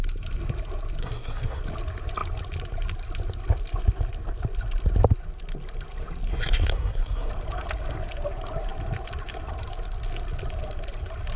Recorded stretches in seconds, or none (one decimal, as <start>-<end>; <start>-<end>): 0.0-1.0; 1.6-6.3; 7.3-11.4